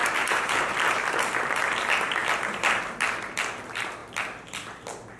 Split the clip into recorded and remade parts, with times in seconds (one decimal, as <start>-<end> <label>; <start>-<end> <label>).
0.0-0.7 remade; 0.7-5.2 recorded